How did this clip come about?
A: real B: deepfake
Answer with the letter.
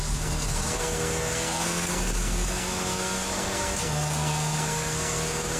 B